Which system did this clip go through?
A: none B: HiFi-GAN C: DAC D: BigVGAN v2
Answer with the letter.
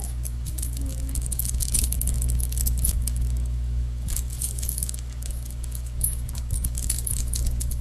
C